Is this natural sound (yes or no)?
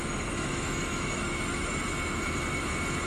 no